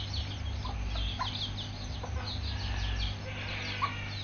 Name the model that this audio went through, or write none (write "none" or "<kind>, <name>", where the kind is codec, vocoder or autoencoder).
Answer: none